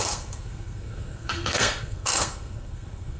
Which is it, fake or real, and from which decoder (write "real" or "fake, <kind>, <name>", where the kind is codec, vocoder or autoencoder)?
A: fake, codec, SNAC